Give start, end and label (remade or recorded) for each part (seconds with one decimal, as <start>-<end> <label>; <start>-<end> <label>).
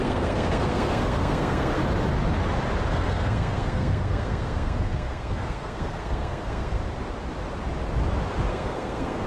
0.0-1.8 remade; 1.8-2.9 recorded; 2.9-6.8 remade; 6.8-8.5 recorded; 8.5-9.3 remade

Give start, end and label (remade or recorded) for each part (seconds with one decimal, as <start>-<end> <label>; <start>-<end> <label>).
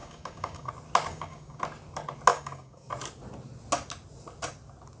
0.0-0.7 remade; 0.7-1.1 recorded; 1.1-1.6 remade; 1.6-2.3 recorded; 2.3-2.9 remade; 2.9-5.0 recorded